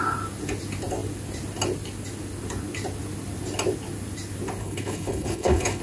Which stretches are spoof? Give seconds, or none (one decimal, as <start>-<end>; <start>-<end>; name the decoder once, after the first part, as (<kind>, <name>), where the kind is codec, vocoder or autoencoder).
4.6-5.8 (codec, HILCodec)